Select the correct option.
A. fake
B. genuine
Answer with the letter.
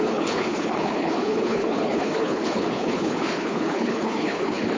A